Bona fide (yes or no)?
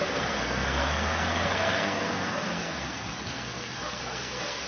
no